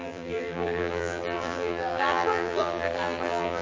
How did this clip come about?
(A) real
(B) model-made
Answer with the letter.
B